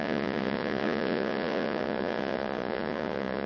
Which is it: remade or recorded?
remade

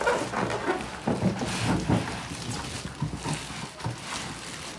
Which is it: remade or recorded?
recorded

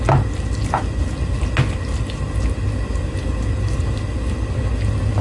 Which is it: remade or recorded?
recorded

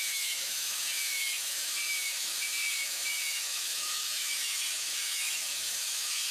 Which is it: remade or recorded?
remade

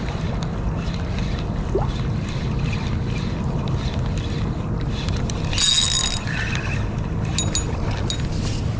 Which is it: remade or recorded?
recorded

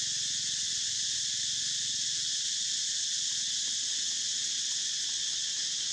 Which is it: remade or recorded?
recorded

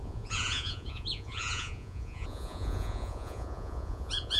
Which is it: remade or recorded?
remade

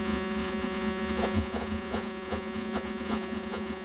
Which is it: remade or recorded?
remade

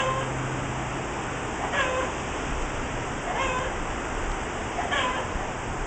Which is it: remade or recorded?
recorded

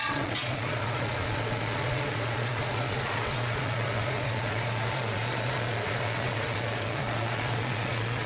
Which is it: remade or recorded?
remade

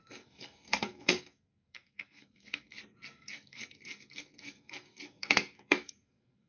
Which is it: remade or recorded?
remade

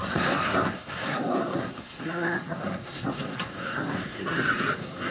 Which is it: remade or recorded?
remade